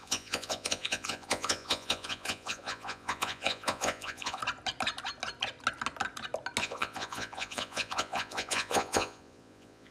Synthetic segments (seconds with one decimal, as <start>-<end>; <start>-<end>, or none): 0.0-4.4; 6.6-9.9